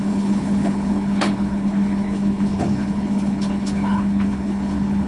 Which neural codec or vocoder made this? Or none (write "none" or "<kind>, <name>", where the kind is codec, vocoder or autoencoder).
codec, HILCodec